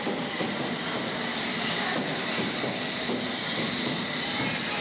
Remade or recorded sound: recorded